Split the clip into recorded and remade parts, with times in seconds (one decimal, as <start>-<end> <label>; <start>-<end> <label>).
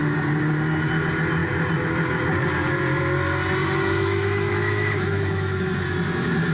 0.0-3.6 recorded; 3.6-5.6 remade; 5.6-6.5 recorded